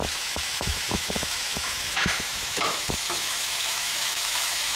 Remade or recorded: remade